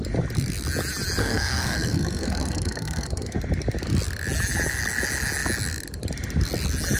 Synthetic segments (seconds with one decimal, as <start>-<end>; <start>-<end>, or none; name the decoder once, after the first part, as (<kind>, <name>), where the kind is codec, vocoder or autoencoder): 1.2-3.4 (codec, SNAC)